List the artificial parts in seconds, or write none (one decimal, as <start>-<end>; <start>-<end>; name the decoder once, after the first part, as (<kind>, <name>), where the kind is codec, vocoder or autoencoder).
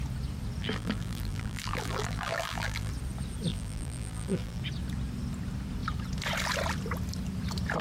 0.6-2.9 (vocoder, BigVGAN v2); 3.5-4.6